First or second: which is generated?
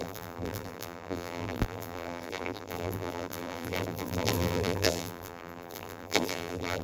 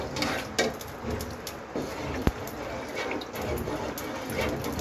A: first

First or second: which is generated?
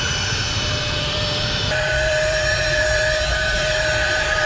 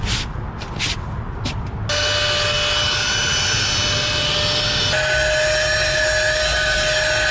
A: first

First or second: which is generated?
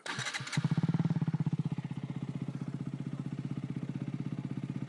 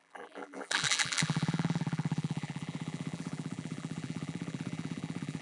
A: second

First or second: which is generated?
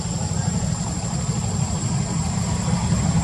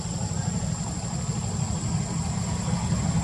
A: first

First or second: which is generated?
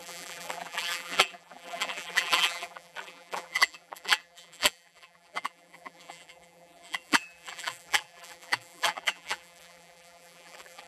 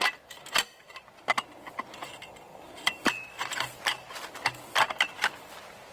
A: first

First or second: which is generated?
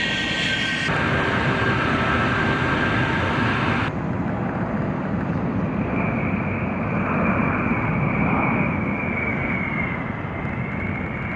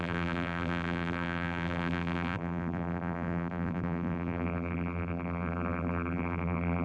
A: second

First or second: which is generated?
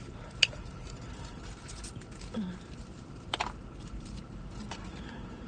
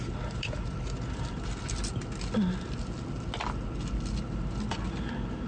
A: first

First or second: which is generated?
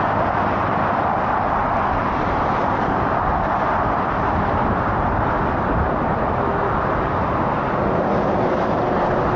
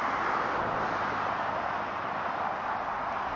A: first